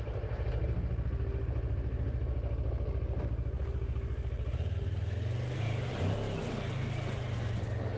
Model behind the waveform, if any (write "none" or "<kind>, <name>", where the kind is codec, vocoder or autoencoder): none